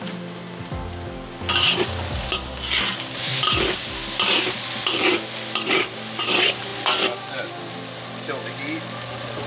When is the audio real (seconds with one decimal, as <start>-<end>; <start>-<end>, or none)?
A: 0.0-9.5